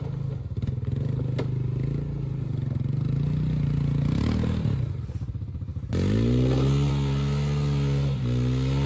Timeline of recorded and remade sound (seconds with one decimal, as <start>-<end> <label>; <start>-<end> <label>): 0.0-8.9 recorded